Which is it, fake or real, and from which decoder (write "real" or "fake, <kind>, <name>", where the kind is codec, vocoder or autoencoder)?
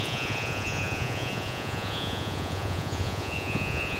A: fake, vocoder, Vocos